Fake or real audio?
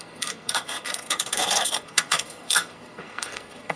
fake